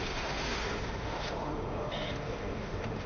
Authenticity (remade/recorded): remade